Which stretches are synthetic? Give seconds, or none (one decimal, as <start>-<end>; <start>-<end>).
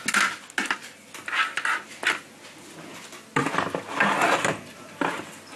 none